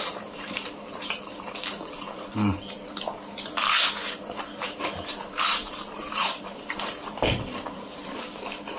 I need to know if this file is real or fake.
fake